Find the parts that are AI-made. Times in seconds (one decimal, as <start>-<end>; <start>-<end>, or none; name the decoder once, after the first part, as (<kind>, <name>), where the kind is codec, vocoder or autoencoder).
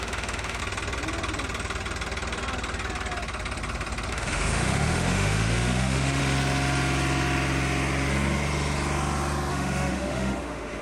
0.0-0.6 (autoencoder, DAC-VAE); 4.1-6.2; 9.5-10.8